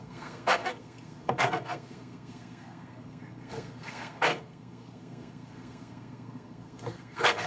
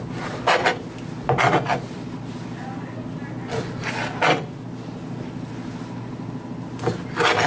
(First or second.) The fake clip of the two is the first